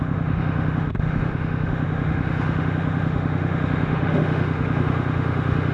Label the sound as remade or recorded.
remade